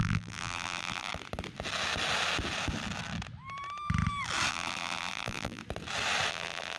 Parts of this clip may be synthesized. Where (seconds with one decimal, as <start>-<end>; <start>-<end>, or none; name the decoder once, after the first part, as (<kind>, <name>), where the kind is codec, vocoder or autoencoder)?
0.0-1.1 (vocoder, BigVGAN v2); 4.5-5.6; 6.3-6.8